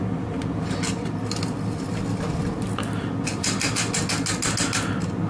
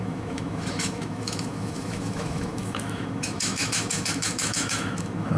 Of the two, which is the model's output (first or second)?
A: second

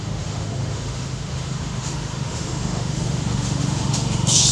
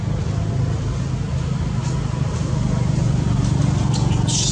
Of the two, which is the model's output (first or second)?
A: first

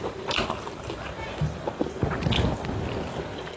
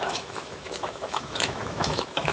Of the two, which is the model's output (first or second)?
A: second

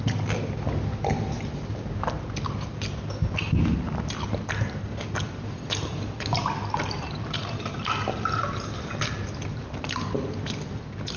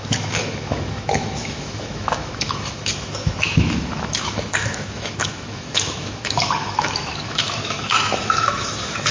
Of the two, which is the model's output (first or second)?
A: second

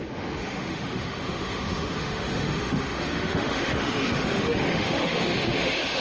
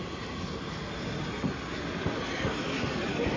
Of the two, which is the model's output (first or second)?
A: first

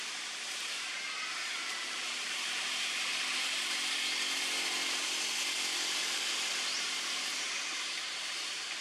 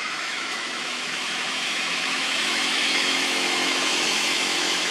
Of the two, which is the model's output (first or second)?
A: second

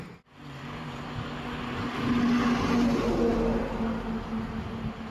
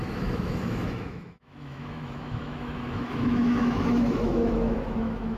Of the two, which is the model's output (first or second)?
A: second